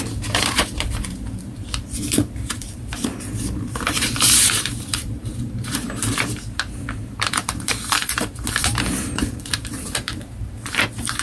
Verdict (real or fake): fake